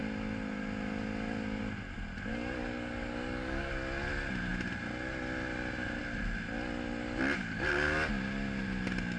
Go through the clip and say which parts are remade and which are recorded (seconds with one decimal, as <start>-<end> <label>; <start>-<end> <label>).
0.0-2.3 recorded; 2.3-3.7 remade; 3.7-7.4 recorded; 7.4-8.1 remade; 8.1-9.2 recorded

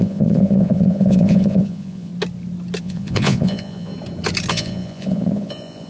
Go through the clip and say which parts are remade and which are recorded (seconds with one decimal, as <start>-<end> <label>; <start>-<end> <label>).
0.0-2.1 remade; 2.1-2.8 recorded; 2.8-3.9 remade; 3.9-4.5 recorded; 4.5-5.9 remade

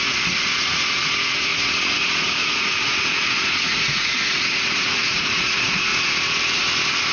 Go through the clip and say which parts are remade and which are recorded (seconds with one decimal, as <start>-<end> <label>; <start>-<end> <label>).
0.0-5.9 remade; 5.9-7.1 recorded

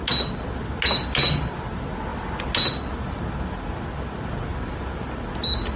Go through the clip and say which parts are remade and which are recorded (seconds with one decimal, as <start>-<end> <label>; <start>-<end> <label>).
0.0-5.8 recorded

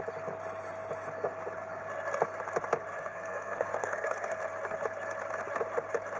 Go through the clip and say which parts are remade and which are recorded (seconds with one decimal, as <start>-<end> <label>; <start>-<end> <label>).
0.0-2.9 recorded; 2.9-4.4 remade; 4.4-6.2 recorded

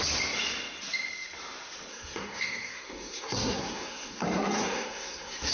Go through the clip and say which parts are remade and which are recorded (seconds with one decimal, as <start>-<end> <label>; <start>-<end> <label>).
0.0-1.9 recorded; 1.9-5.5 remade